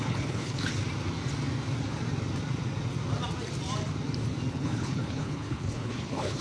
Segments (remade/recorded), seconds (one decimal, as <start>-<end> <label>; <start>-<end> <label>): 0.0-0.7 remade; 0.7-4.5 recorded; 4.5-6.4 remade